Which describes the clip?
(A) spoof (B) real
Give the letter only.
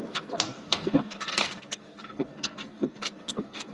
A